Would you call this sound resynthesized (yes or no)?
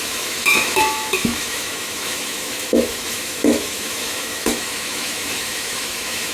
yes